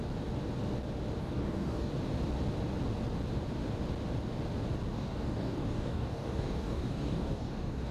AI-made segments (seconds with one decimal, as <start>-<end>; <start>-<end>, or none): 1.2-1.9; 4.9-7.9